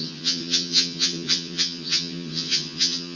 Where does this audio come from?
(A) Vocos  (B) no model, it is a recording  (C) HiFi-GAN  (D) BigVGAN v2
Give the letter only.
C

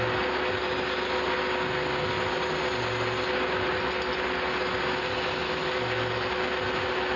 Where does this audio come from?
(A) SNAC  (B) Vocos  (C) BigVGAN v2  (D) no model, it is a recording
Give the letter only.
D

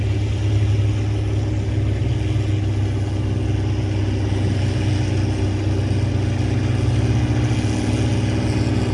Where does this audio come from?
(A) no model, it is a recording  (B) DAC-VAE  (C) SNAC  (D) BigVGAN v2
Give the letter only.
A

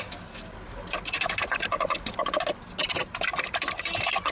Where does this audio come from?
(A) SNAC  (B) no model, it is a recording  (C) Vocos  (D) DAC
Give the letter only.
B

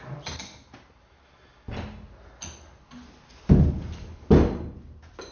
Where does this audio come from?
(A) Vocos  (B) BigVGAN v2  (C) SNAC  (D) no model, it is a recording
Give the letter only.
D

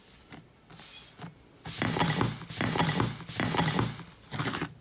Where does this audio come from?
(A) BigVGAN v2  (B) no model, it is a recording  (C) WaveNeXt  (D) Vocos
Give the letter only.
B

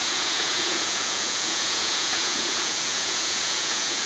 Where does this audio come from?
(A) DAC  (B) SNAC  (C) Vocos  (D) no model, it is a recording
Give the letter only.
C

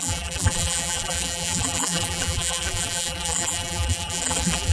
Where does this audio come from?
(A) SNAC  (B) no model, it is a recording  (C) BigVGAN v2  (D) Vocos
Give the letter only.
C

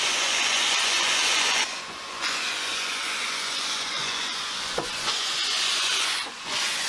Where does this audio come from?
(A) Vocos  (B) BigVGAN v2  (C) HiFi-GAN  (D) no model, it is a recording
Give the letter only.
A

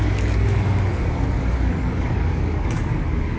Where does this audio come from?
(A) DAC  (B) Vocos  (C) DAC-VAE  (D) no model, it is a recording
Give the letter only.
A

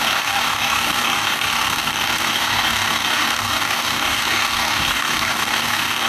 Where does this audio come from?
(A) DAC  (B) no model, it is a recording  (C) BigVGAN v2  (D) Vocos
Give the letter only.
A